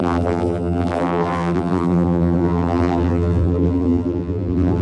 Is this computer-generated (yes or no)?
yes